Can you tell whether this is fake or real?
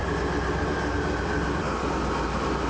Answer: real